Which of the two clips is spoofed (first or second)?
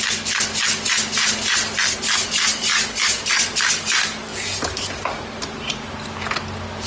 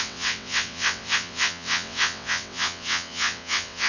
second